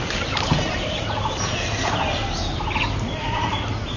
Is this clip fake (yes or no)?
no